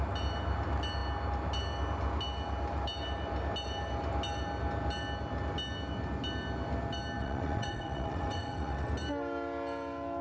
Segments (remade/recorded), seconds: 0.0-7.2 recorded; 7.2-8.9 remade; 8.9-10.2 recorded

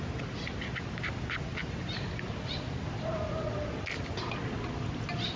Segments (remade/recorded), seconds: 0.0-1.6 recorded; 1.6-3.7 remade; 3.7-5.4 recorded

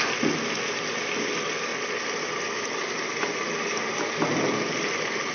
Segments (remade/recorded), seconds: 0.0-5.3 recorded

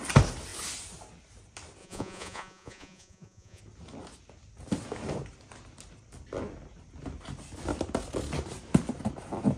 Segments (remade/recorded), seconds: 0.0-1.8 recorded; 1.8-3.6 remade; 3.6-9.6 recorded

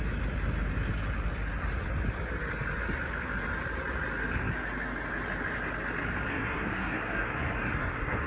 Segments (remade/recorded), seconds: 0.0-6.3 recorded; 6.3-8.3 remade

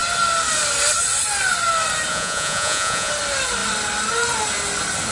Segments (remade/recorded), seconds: 0.0-2.1 recorded; 2.1-3.1 remade; 3.1-5.1 recorded

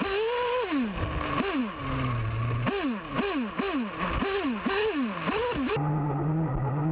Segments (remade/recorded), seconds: 0.0-6.9 recorded